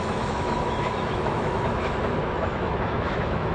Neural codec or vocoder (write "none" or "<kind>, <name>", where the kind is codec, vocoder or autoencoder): autoencoder, DAC-VAE